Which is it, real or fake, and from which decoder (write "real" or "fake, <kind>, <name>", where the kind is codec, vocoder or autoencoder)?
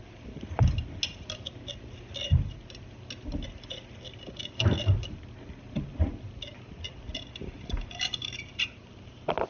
real